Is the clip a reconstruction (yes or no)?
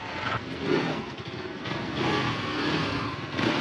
yes